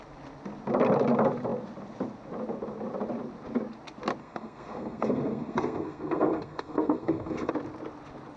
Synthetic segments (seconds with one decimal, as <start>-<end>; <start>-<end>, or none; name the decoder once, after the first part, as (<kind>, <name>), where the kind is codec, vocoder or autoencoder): 4.2-7.5 (codec, SNAC)